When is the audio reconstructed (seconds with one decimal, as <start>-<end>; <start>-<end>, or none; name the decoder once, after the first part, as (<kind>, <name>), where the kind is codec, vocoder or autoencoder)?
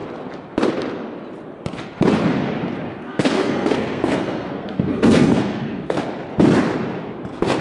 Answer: 2.9-6.0 (codec, SNAC)